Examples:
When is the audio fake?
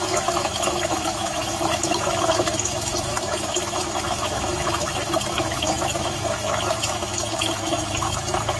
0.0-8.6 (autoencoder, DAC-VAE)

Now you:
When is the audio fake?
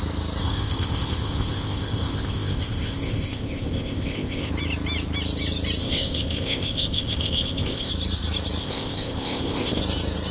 0.4-4.5 (codec, ZipCodec); 5.8-7.9; 8.6-9.8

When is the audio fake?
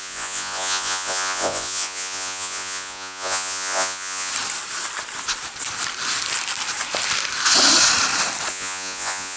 0.0-4.3 (vocoder, Vocos); 8.5-9.4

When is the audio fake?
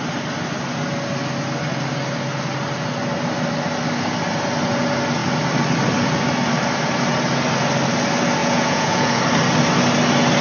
8.4-9.2 (vocoder, Vocos)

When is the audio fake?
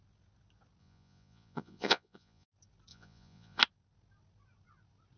0.8-2.5 (vocoder, Vocos); 2.9-3.6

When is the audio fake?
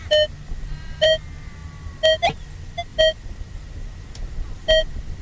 none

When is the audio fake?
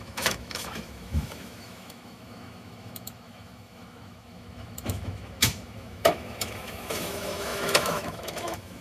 0.0-8.8 (autoencoder, DAC-VAE)